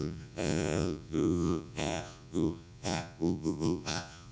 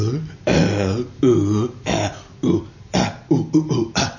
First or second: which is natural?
second